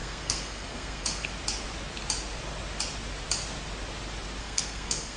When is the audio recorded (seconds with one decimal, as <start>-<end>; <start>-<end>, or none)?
1.3-4.4